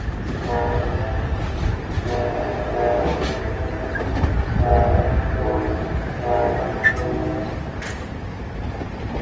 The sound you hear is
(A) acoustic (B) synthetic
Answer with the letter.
A